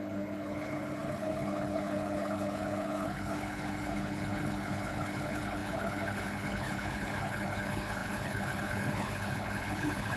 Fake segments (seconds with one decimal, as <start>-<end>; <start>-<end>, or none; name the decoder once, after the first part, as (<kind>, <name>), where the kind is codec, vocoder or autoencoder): 0.0-10.2 (codec, HILCodec)